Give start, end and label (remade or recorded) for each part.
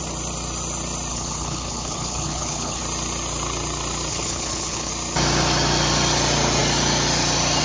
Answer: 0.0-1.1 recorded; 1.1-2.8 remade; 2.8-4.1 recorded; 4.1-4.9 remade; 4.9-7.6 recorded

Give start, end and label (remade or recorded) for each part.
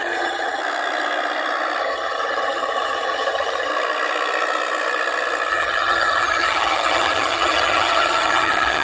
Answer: 0.0-0.6 remade; 0.6-1.8 recorded; 1.8-3.7 remade; 3.7-5.5 recorded; 5.5-8.8 remade